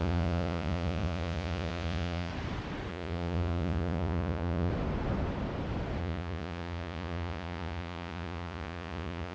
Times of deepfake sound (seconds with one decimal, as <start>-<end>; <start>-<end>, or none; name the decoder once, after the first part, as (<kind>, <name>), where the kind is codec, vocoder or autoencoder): 0.0-2.3 (vocoder, Vocos); 2.9-4.7; 6.0-9.3